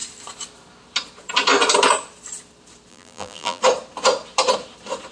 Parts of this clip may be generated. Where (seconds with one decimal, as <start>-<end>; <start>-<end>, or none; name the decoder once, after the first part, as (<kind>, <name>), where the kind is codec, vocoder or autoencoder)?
2.9-3.6 (vocoder, BigVGAN v2)